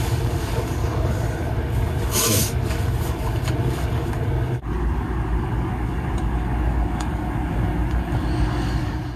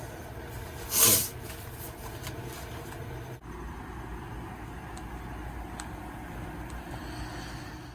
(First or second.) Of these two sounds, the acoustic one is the second